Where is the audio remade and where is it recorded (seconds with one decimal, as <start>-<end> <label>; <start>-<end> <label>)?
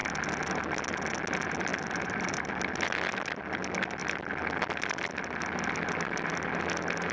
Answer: 0.0-1.7 recorded; 1.7-3.4 remade; 3.4-4.0 recorded; 4.0-4.8 remade; 4.8-7.1 recorded